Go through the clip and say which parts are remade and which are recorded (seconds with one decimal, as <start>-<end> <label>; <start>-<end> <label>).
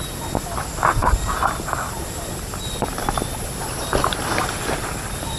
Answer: 0.0-5.4 recorded